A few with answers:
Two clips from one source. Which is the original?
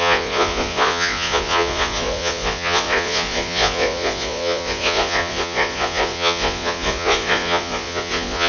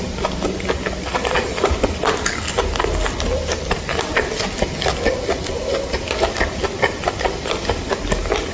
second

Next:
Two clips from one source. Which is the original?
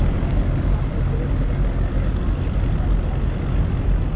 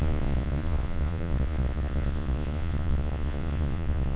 first